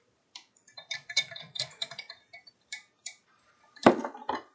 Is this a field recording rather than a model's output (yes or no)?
no